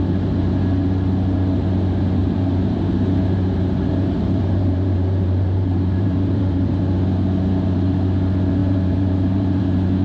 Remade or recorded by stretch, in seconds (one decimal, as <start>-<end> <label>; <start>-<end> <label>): 0.0-2.2 recorded; 2.2-6.8 remade; 6.8-8.6 recorded; 8.6-9.6 remade; 9.6-10.0 recorded